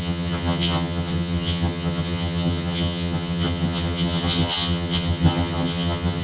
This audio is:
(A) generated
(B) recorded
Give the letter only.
A